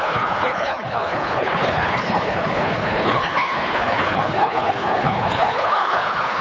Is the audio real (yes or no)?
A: no